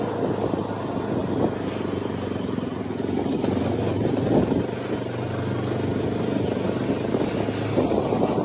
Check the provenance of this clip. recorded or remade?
recorded